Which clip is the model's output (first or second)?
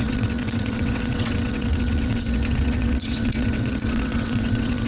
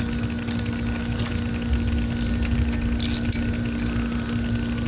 first